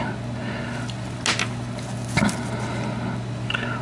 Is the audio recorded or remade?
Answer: recorded